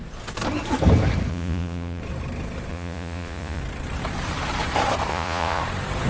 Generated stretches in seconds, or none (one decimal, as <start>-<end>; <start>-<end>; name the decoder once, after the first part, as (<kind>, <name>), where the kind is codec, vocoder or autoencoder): 1.3-2.0 (vocoder, Vocos); 2.7-3.6; 5.1-5.6